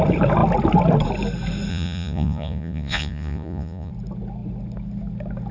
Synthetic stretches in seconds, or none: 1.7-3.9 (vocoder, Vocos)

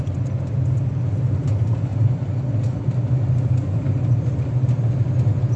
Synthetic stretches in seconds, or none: none

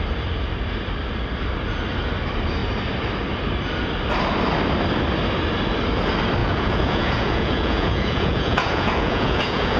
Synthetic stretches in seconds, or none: 6.4-9.8 (vocoder, Vocos)

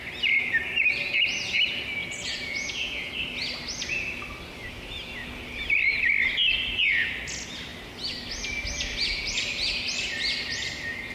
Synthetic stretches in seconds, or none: 2.0-3.1 (vocoder, Vocos)

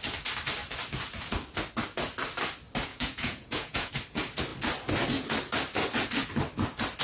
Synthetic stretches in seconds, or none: 2.9-3.9 (vocoder, Vocos)